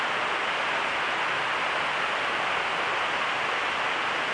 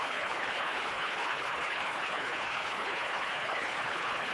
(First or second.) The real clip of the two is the first